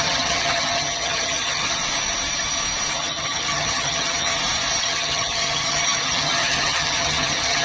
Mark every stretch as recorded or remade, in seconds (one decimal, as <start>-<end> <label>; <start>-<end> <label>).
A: 0.0-1.8 remade; 1.8-2.9 recorded; 2.9-4.3 remade; 4.3-4.8 recorded; 4.8-7.6 remade

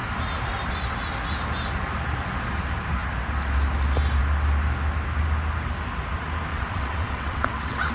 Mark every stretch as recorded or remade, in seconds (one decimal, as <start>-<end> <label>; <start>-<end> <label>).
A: 0.0-6.5 recorded; 6.5-7.9 remade

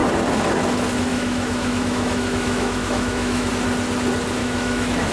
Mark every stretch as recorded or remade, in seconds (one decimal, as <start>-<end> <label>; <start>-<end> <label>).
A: 0.0-1.1 recorded; 1.1-3.5 remade; 3.5-4.4 recorded; 4.4-5.1 remade

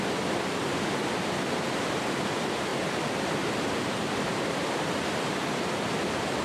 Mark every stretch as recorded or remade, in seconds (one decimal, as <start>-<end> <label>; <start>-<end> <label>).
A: 0.0-2.7 remade; 2.7-3.8 recorded; 3.8-6.4 remade